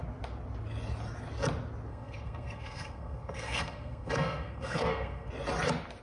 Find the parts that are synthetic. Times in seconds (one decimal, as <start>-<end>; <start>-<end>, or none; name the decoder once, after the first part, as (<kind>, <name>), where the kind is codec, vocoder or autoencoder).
1.9-5.3 (codec, SNAC)